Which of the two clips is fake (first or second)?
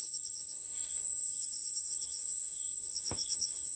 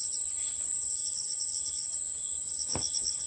first